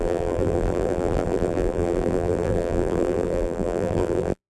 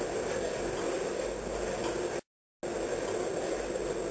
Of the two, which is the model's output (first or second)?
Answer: first